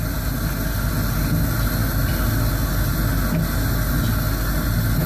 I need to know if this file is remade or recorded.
recorded